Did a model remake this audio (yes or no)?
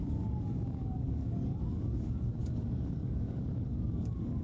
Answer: yes